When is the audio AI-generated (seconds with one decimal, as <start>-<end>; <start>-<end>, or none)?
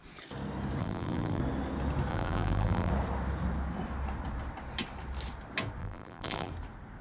0.8-1.4; 2.1-2.9; 5.8-6.5